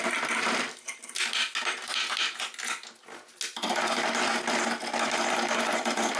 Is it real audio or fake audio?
real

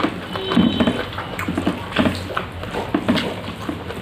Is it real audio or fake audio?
real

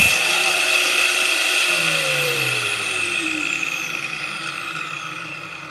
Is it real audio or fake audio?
fake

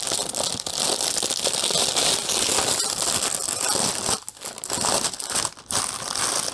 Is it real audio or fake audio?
real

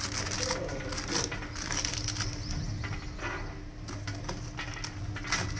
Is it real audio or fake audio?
real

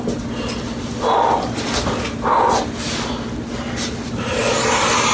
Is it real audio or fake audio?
real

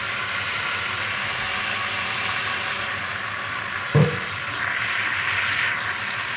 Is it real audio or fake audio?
real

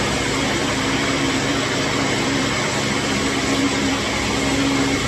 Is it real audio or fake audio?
fake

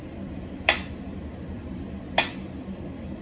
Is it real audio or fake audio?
fake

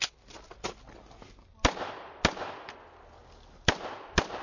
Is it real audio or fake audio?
real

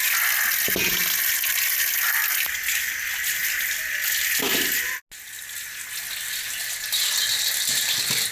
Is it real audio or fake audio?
real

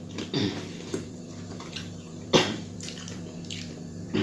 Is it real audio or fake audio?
fake